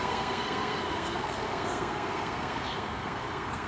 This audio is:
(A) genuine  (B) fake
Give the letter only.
B